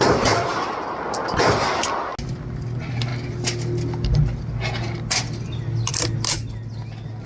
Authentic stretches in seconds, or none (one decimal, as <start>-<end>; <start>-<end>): 0.0-7.3